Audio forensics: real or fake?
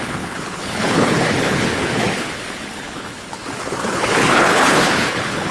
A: fake